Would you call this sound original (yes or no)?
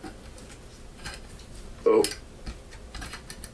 yes